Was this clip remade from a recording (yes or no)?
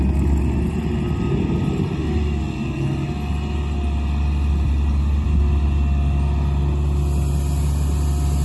no